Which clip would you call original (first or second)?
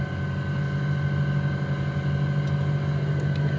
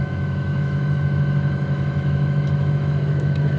first